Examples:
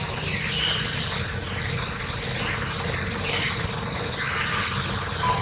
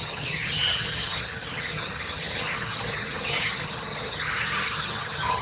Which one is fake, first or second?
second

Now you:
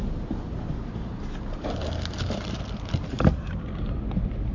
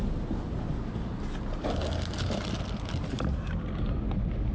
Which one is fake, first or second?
first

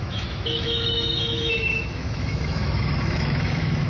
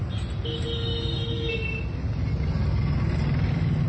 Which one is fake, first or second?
first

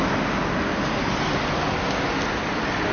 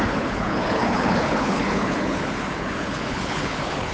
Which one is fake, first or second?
second